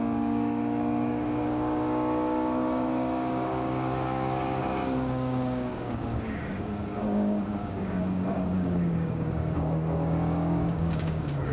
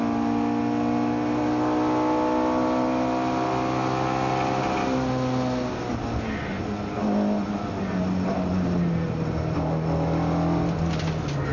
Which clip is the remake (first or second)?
first